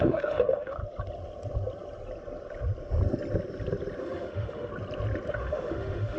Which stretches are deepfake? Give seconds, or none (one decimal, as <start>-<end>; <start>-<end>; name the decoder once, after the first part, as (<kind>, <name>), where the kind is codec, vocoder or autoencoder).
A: 0.0-0.8 (autoencoder, DAC-VAE); 4.0-4.7; 5.3-6.2